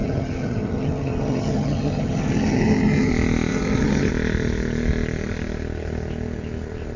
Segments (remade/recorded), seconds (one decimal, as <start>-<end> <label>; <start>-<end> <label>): 0.0-3.1 remade; 3.1-3.5 recorded; 3.5-4.1 remade; 4.1-7.0 recorded